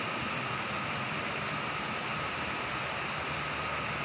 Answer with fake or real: real